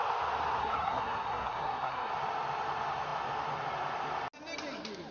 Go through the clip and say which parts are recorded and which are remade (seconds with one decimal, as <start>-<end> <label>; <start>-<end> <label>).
0.0-0.6 recorded; 0.6-2.1 remade; 2.1-5.1 recorded